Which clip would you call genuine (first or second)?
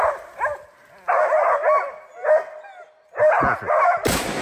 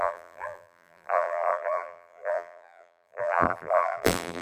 first